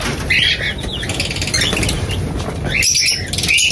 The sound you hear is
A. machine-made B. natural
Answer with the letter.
B